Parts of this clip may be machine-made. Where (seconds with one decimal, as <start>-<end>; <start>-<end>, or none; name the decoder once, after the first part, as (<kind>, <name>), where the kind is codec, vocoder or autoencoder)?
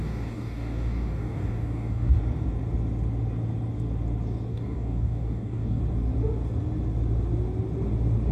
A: 0.0-2.2 (codec, DAC); 4.5-5.8